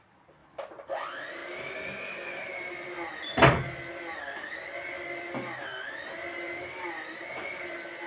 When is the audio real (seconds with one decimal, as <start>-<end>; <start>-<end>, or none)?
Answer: 0.0-8.1